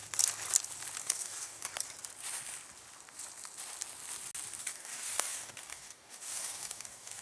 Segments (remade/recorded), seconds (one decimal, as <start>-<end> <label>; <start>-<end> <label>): 0.0-1.0 recorded; 1.0-1.7 remade; 1.7-4.6 recorded; 4.6-7.2 remade